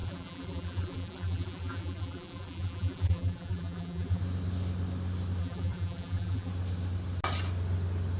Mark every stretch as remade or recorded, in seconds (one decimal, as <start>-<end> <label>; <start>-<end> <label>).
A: 0.0-4.2 remade; 4.2-5.4 recorded; 5.4-6.5 remade; 6.5-8.2 recorded